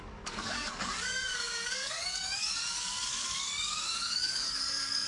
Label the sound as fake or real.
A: fake